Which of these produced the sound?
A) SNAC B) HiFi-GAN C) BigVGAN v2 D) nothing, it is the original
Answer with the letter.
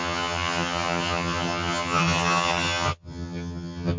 B